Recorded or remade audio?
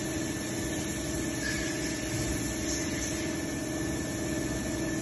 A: recorded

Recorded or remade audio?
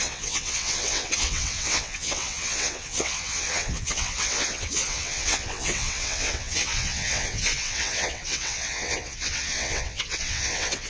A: remade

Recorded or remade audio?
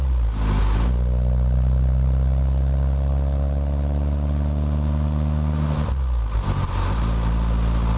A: recorded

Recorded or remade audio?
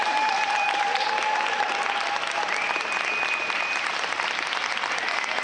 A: recorded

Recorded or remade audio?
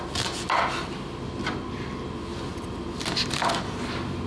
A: recorded